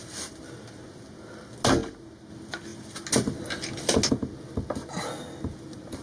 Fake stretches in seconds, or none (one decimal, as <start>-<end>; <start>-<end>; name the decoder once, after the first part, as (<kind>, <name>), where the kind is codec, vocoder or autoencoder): none